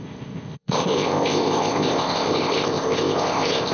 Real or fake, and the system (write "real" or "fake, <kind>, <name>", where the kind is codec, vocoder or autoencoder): fake, codec, ZipCodec